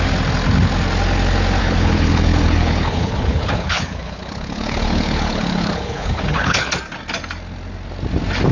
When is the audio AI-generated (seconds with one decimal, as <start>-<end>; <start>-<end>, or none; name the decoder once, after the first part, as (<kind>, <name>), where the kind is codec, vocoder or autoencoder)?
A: 1.6-6.7 (codec, HILCodec)